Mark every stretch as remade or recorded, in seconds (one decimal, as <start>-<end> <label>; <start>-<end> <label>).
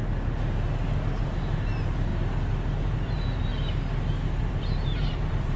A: 0.0-1.2 recorded; 1.2-2.1 remade; 2.1-2.8 recorded; 2.8-3.5 remade; 3.5-4.4 recorded; 4.4-5.6 remade